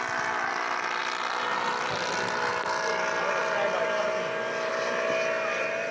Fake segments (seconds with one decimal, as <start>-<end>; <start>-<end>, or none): none